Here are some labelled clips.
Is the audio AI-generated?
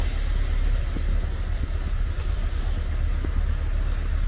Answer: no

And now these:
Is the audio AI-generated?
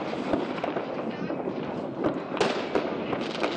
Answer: no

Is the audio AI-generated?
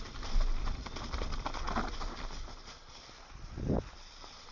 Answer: no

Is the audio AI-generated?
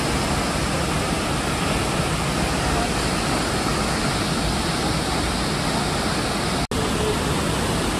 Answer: no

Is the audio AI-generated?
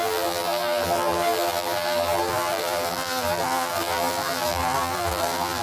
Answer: yes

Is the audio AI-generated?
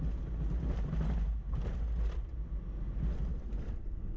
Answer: no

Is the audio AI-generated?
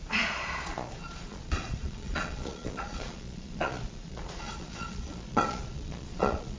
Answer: yes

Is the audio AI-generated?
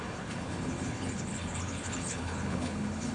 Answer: yes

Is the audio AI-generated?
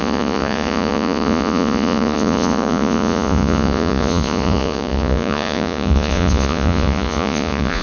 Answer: yes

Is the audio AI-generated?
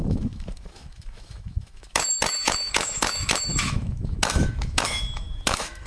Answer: yes